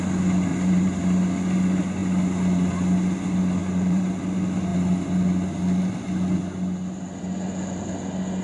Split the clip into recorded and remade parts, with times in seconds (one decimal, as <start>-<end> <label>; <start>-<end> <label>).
0.0-0.5 recorded; 0.5-1.0 remade; 1.0-3.6 recorded; 3.6-4.2 remade; 4.2-8.4 recorded